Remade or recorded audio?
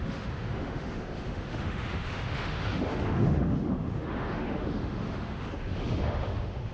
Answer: remade